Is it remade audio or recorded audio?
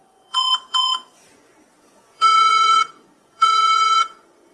remade